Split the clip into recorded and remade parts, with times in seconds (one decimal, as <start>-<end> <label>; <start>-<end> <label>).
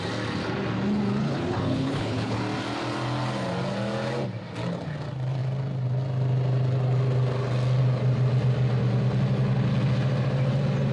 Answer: 0.0-1.2 recorded; 1.2-2.4 remade; 2.4-10.9 recorded